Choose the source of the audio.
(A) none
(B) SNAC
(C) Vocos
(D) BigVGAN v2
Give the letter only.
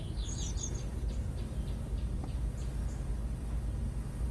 A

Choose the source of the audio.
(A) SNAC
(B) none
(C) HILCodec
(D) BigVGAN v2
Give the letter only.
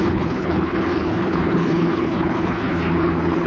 C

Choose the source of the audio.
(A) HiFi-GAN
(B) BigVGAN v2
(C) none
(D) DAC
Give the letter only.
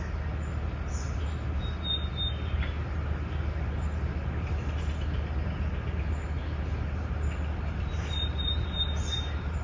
C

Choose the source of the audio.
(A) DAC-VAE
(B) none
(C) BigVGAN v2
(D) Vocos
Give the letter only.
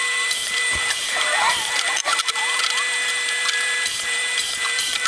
C